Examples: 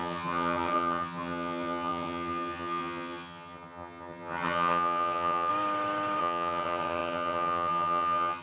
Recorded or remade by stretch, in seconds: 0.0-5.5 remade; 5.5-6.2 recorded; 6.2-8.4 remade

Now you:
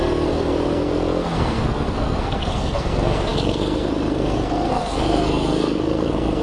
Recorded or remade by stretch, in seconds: 0.0-6.4 remade